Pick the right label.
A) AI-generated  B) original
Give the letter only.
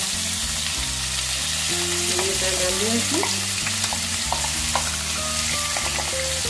B